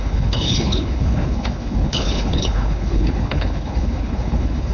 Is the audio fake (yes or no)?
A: yes